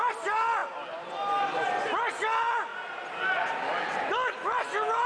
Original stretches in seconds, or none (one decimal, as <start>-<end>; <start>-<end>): 0.0-5.1